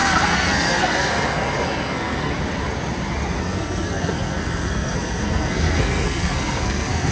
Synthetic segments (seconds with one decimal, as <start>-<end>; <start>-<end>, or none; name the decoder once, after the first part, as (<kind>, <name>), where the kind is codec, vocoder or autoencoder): 0.0-2.3 (codec, SNAC); 3.4-7.1